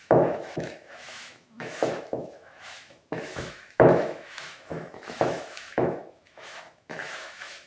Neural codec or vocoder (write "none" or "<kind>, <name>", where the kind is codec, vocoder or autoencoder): autoencoder, DAC-VAE